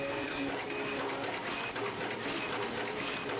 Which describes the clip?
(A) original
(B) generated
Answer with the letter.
A